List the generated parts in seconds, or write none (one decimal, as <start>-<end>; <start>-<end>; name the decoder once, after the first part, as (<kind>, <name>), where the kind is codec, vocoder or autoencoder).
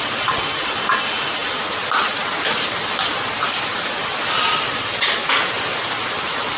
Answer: 1.4-4.1 (vocoder, BigVGAN v2)